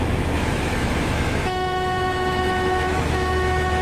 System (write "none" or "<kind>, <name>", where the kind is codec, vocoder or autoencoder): autoencoder, DAC-VAE